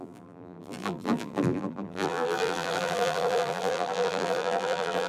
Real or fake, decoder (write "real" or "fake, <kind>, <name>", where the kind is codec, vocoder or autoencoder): fake, vocoder, BigVGAN v2